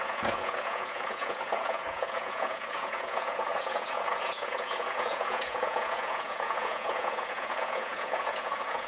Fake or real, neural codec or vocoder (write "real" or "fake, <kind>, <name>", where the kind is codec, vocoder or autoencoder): fake, vocoder, Vocos